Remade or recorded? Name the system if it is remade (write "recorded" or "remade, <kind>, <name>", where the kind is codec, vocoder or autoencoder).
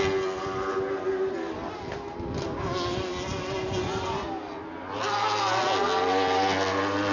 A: recorded